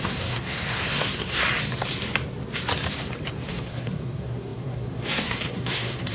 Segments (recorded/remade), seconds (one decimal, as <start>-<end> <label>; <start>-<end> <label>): 0.0-1.4 remade; 1.4-3.5 recorded; 3.5-6.1 remade